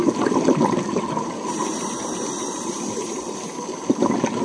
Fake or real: fake